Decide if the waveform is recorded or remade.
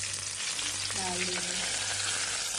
recorded